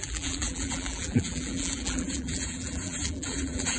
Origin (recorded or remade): remade